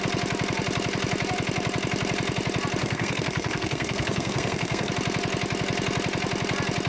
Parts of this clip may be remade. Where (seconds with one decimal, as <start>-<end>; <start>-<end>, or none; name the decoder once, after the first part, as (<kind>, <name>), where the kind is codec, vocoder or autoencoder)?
2.8-4.9 (codec, SNAC)